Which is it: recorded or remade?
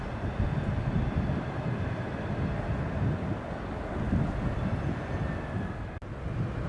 recorded